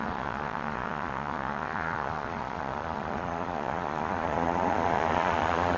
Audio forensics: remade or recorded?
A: remade